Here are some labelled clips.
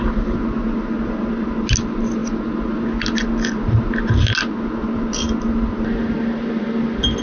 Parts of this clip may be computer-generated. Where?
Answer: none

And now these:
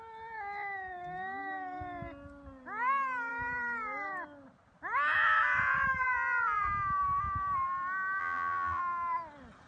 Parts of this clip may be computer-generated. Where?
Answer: 8.2-8.8

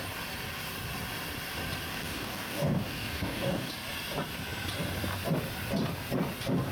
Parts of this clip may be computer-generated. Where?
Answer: 1.9-3.7

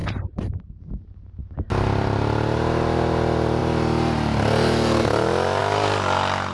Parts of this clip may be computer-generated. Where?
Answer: 0.0-0.5